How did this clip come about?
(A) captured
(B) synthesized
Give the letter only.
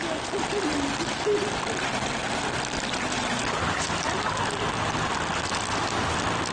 A